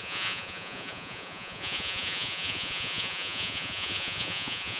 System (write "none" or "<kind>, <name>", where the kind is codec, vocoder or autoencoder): vocoder, Vocos